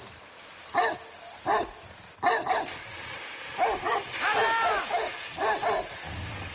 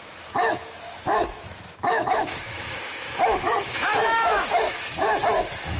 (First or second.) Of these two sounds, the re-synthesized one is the second